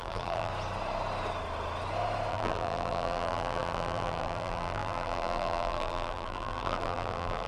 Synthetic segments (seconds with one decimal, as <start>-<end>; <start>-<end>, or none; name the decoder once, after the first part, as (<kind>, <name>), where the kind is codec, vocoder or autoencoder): 0.0-0.5 (vocoder, BigVGAN v2); 2.3-7.5